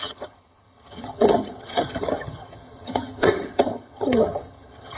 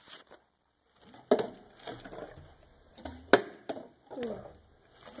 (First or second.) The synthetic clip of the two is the first